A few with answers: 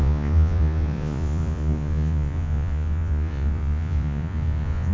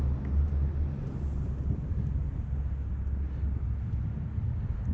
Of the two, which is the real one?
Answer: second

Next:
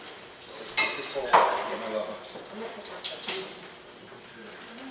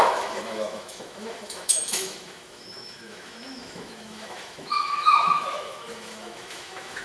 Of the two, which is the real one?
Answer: first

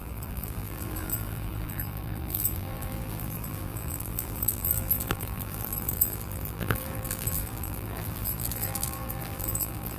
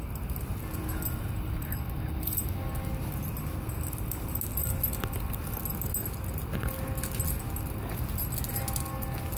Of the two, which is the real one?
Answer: second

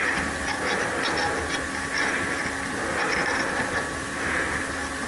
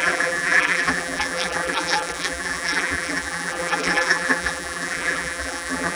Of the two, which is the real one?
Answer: first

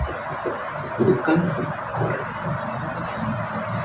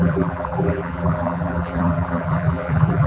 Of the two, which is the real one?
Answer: first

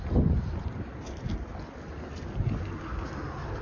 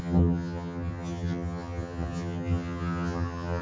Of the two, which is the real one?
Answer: first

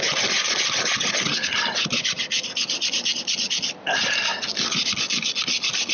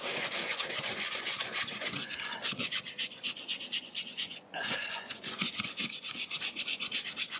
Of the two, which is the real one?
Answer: first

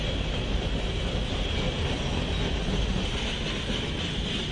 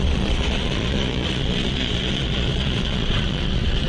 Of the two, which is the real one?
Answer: first